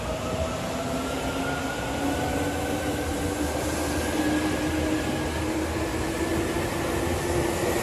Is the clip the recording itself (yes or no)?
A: yes